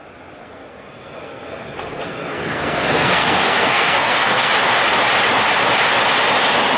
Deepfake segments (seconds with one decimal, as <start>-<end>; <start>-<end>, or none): 0.4-4.5